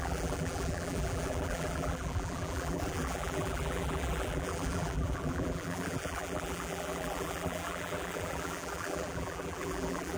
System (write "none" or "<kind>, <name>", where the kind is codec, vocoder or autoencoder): vocoder, BigVGAN v2